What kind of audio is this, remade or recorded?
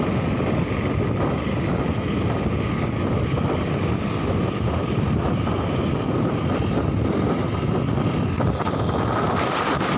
recorded